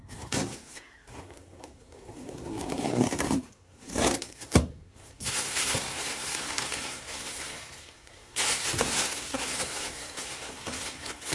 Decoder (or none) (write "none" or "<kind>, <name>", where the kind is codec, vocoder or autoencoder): codec, SNAC